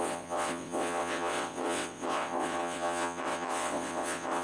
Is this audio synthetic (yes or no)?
yes